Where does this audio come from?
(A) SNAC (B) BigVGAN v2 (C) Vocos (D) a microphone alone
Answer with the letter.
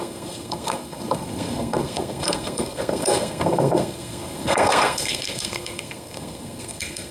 A